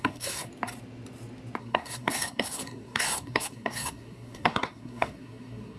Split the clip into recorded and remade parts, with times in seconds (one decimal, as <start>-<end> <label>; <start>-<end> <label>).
0.0-0.5 remade; 0.5-1.6 recorded; 1.6-5.8 remade

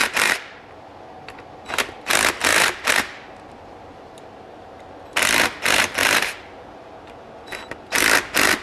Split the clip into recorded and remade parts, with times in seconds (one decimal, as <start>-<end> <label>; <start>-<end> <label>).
0.0-0.7 remade; 0.7-2.5 recorded; 2.5-4.8 remade; 4.8-6.0 recorded; 6.0-6.9 remade; 6.9-8.6 recorded

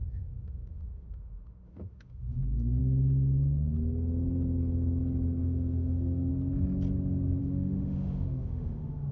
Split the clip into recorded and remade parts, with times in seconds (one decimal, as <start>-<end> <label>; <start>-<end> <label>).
0.0-2.8 remade; 2.8-5.4 recorded; 5.4-6.3 remade; 6.3-7.4 recorded; 7.4-9.1 remade